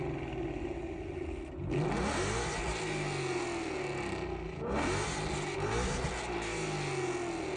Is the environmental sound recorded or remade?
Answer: recorded